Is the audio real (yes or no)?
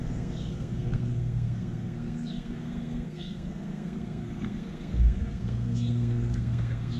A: no